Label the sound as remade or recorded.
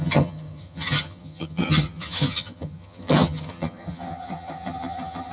remade